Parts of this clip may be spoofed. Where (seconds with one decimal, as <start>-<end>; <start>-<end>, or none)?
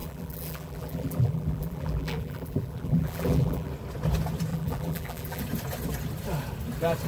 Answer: 0.0-3.7; 4.5-5.4